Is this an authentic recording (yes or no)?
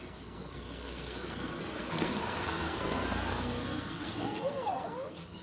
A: no